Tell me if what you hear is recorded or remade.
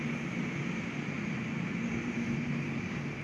recorded